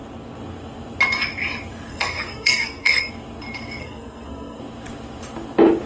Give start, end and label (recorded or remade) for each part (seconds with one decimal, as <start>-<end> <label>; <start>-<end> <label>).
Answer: 0.0-1.9 recorded; 1.9-3.1 remade; 3.1-3.8 recorded; 3.8-4.6 remade; 4.6-5.9 recorded